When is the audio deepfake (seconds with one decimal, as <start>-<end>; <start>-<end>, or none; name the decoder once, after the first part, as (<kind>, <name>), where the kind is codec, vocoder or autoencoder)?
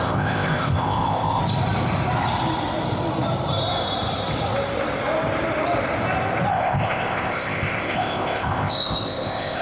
0.0-1.4 (codec, ZipCodec); 6.5-9.6